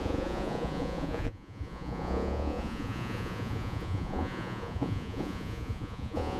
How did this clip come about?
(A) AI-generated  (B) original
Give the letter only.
A